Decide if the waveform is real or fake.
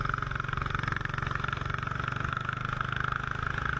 real